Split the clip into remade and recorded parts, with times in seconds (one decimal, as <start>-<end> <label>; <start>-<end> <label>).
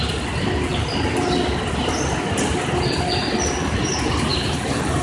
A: 0.0-0.7 recorded; 0.7-1.2 remade; 1.2-3.2 recorded; 3.2-3.8 remade; 3.8-4.3 recorded; 4.3-5.0 remade